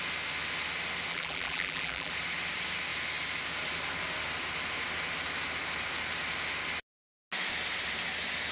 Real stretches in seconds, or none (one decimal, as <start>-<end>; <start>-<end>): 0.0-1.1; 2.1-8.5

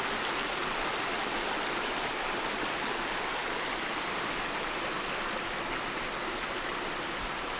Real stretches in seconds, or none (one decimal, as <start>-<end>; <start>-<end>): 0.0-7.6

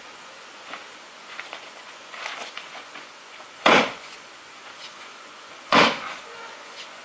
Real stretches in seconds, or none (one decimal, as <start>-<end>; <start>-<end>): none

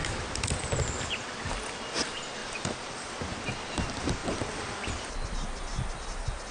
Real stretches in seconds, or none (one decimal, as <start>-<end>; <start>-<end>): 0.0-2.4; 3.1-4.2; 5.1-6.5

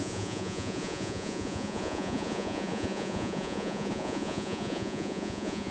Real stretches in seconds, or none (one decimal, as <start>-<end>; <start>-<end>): none

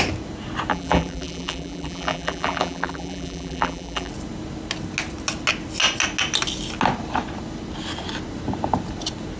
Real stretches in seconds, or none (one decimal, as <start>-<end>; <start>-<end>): 0.0-0.7; 4.1-9.4

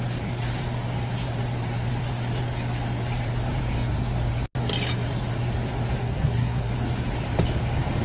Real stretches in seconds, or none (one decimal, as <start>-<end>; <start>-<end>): 0.0-6.0; 6.7-8.0